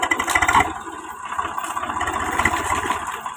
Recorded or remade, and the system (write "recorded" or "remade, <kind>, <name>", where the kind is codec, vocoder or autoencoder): recorded